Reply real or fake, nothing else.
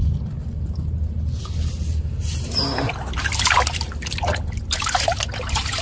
real